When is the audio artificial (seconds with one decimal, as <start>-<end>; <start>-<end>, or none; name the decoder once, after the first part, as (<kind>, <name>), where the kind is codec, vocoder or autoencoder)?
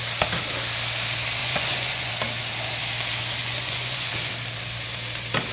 1.4-2.1 (vocoder, Vocos); 3.4-4.1